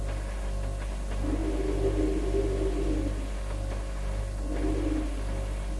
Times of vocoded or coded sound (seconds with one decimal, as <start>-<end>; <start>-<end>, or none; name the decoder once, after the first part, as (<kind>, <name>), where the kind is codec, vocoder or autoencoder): none